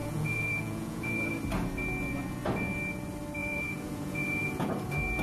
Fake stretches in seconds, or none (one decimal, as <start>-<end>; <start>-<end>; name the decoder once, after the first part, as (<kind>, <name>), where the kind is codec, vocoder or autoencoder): 0.0-1.3 (vocoder, Vocos); 3.4-4.7